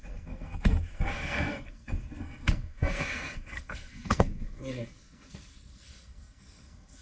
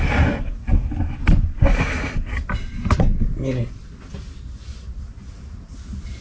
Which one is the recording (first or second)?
second